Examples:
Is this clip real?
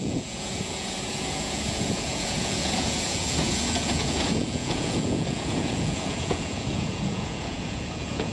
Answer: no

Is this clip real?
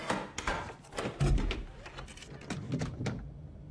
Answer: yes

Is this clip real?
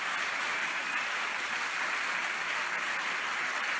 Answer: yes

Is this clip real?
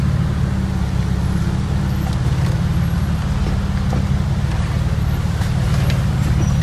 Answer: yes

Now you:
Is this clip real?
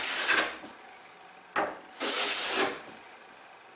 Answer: yes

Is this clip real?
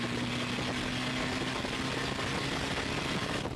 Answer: yes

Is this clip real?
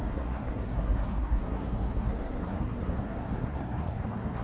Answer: no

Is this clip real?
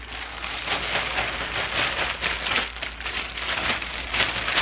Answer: yes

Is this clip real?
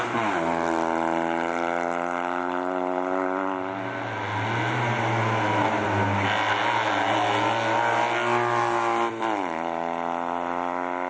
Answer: yes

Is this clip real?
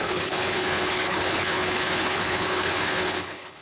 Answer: no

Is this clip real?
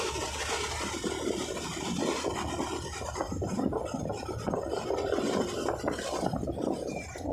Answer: yes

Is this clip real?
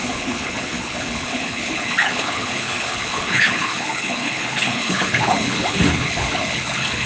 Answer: no